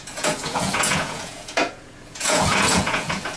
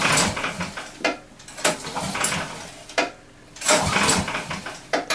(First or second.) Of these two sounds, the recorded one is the second